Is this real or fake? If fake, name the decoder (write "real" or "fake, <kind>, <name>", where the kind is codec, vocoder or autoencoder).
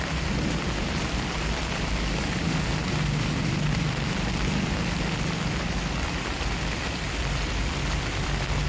fake, vocoder, BigVGAN v2